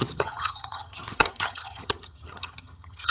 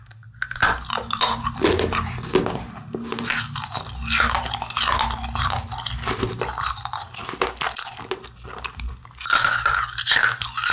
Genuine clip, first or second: second